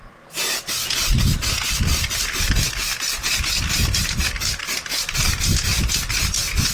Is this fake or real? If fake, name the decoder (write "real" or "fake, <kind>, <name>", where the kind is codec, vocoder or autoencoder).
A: real